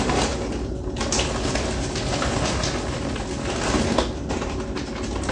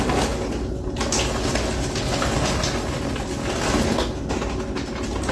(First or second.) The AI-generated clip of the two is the first